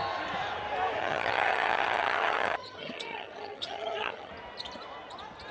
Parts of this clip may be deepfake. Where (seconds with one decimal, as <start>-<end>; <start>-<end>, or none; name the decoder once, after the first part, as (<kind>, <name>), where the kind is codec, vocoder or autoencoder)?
1.0-4.3 (vocoder, HiFi-GAN)